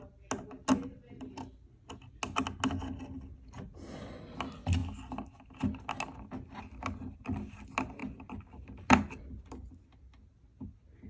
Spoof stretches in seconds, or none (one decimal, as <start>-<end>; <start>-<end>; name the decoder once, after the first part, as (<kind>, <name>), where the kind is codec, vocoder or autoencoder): none